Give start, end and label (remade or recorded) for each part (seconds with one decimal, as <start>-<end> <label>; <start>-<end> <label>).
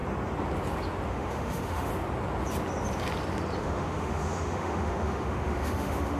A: 0.0-1.1 recorded; 1.1-1.9 remade; 1.9-3.6 recorded; 3.6-6.2 remade